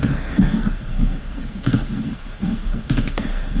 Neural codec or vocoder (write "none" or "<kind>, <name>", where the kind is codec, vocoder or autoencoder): codec, SNAC